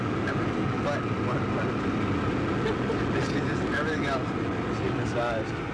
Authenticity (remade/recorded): recorded